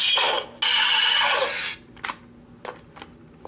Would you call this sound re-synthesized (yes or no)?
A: no